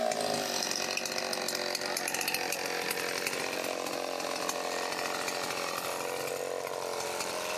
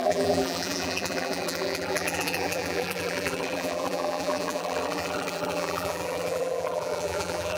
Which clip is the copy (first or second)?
second